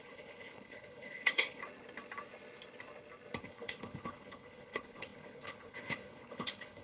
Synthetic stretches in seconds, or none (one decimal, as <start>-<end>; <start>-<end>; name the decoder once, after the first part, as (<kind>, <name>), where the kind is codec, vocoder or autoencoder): 0.0-1.6 (codec, HILCodec); 3.4-6.8